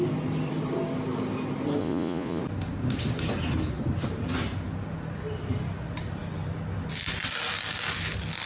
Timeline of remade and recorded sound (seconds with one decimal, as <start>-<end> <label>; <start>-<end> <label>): 0.0-1.8 recorded; 1.8-2.4 remade; 2.4-8.5 recorded